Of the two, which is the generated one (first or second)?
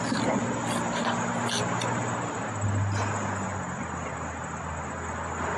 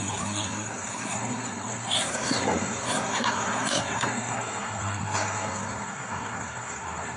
second